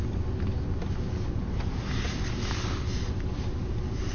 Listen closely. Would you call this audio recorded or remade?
recorded